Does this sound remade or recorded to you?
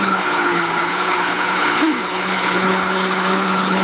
remade